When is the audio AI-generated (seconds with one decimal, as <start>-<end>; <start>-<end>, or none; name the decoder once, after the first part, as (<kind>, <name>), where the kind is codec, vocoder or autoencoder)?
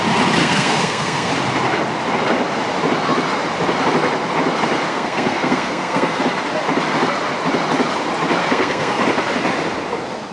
0.4-1.3 (codec, SNAC); 4.9-6.2; 8.4-9.0